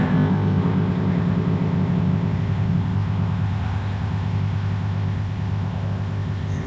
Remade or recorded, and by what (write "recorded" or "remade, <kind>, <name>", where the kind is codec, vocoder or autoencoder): remade, codec, ZipCodec